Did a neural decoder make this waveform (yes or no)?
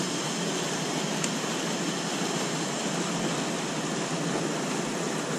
no